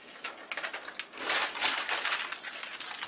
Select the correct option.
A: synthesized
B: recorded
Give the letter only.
B